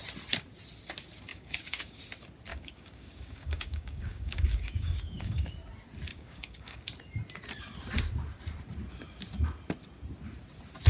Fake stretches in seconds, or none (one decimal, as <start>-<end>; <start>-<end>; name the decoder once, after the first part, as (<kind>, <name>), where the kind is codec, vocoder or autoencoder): 1.3-2.0 (codec, DAC); 2.5-5.5; 6.1-6.8